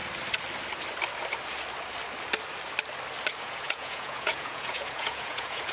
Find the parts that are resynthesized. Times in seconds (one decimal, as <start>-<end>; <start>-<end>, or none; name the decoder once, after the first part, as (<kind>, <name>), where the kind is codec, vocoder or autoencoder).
3.4-5.7 (vocoder, Vocos)